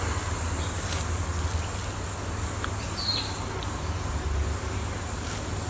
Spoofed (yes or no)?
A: no